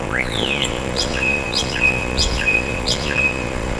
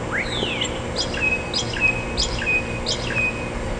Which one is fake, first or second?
first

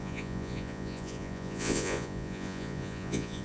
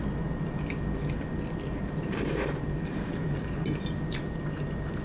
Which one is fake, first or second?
first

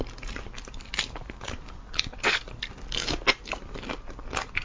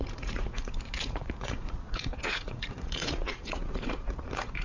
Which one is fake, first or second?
second